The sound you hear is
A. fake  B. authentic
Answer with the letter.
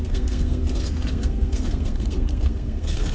A